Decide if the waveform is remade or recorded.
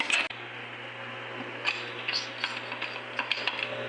recorded